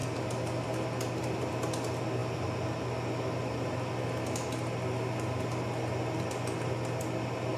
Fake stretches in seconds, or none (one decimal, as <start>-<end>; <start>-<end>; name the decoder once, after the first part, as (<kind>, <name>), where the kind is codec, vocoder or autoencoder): none